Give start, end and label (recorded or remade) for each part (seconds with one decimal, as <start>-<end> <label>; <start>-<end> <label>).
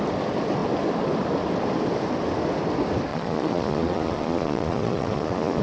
0.0-3.1 recorded; 3.1-5.6 remade